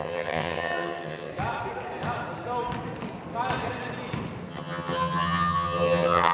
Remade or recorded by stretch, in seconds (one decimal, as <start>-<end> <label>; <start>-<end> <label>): 0.0-1.3 remade; 1.3-4.5 recorded; 4.5-6.3 remade